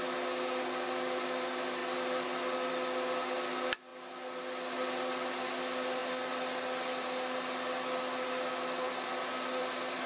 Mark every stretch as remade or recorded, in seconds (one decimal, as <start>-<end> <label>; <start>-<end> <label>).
0.0-10.1 recorded